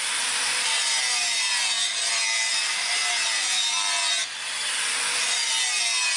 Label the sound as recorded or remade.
recorded